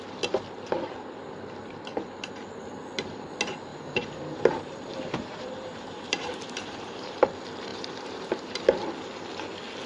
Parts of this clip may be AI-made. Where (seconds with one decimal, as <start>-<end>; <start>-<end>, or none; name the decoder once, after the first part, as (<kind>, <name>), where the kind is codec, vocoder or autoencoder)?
3.7-7.1 (vocoder, BigVGAN v2); 7.7-8.6